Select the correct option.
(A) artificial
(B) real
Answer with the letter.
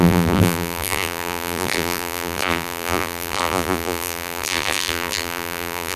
A